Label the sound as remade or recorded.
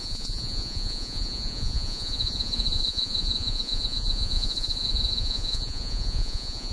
remade